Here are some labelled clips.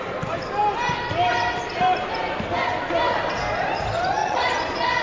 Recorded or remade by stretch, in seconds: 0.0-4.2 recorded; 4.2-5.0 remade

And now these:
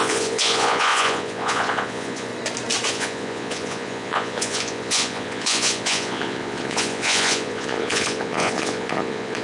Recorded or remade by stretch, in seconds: 0.0-2.3 remade; 2.3-2.9 recorded; 2.9-9.4 remade

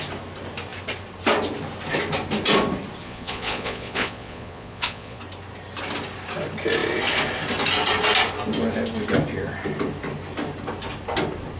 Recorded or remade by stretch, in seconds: 0.0-3.0 recorded; 3.0-5.2 remade; 5.2-11.6 recorded

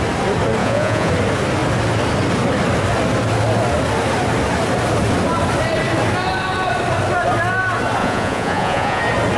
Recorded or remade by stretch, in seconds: 0.0-0.6 recorded; 0.6-1.1 remade; 1.1-8.0 recorded; 8.0-9.0 remade; 9.0-9.4 recorded

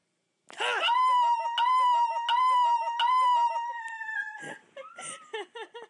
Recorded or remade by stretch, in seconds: 0.0-5.9 recorded

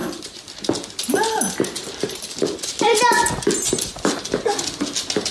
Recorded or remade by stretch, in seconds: 0.0-5.3 recorded

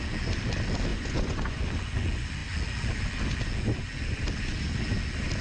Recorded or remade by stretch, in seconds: 0.0-0.9 recorded; 0.9-1.6 remade; 1.6-5.4 recorded

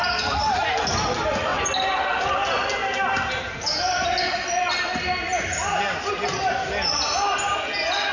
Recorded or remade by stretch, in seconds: 0.0-8.1 recorded